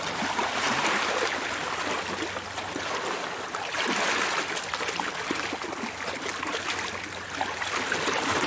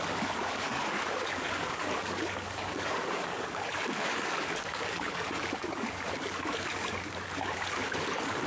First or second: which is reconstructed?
second